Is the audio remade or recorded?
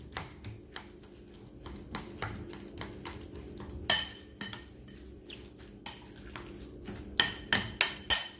recorded